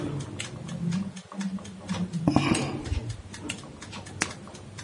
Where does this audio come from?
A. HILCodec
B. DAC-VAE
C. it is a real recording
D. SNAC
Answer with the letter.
C